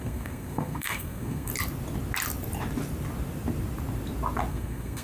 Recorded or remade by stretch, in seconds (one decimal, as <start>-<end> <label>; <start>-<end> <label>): 0.0-1.5 remade; 1.5-4.5 recorded; 4.5-5.0 remade